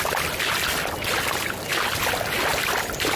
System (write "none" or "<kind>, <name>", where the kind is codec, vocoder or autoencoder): none